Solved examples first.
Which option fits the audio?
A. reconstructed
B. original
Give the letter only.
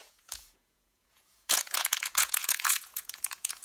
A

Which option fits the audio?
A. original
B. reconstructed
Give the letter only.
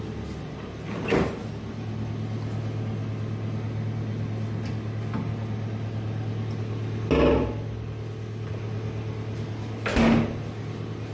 A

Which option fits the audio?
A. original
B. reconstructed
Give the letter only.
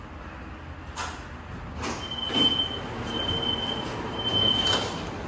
A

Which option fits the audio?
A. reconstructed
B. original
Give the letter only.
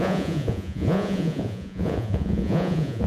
A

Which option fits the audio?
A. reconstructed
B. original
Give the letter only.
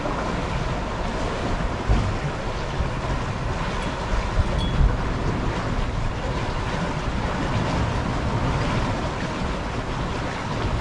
B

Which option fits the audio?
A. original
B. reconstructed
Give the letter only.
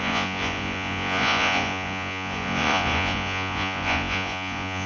B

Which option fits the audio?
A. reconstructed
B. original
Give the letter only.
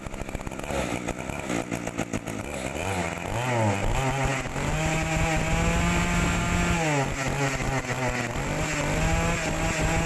B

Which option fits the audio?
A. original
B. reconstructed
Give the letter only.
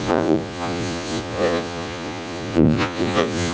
B